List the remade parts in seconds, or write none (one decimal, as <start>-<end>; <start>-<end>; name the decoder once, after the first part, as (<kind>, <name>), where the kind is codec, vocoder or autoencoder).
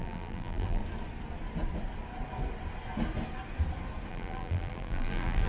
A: 0.0-0.8 (vocoder, BigVGAN v2); 4.1-5.5